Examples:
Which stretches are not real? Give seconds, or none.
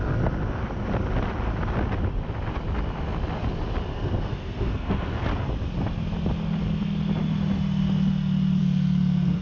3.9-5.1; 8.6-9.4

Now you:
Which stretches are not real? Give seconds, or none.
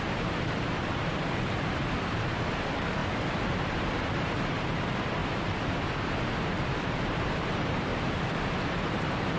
0.0-3.0; 4.1-5.2; 6.8-7.9; 8.9-9.4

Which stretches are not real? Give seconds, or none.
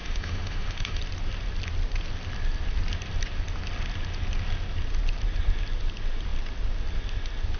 0.0-1.0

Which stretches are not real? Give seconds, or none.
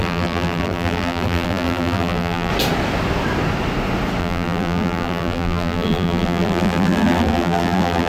0.0-2.5; 4.2-8.1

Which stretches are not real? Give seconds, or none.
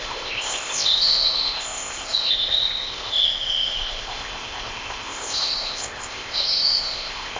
0.0-7.4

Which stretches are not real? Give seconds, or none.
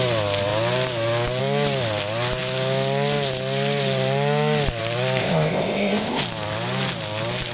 5.2-6.2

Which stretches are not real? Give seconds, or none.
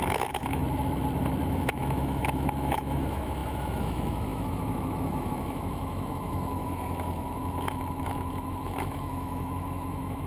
0.0-0.6; 1.5-10.3